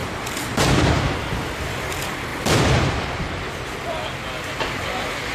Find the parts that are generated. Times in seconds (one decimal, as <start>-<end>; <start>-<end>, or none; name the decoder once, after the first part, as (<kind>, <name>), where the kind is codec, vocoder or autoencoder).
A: none